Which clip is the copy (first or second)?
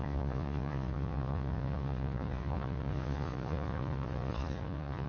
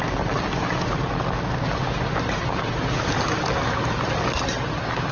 first